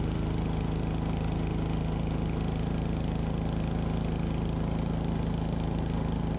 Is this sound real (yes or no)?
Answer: yes